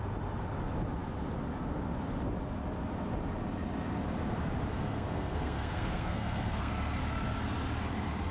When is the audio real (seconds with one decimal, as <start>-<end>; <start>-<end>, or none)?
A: 0.0-4.7; 6.7-8.3